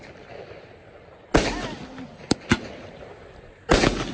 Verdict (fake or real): real